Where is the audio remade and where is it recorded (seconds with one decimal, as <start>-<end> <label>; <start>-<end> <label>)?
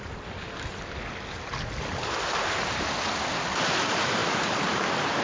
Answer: 0.0-5.2 recorded